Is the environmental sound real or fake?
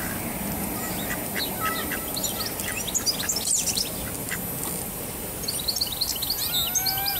real